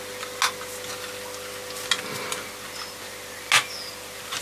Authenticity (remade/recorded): recorded